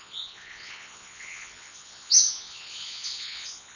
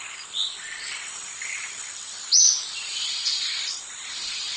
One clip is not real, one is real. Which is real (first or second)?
second